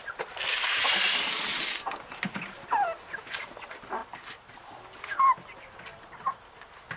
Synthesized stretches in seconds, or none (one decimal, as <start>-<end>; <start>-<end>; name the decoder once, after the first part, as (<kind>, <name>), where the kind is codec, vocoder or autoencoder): none